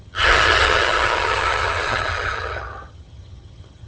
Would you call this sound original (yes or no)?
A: no